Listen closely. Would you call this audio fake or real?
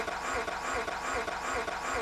real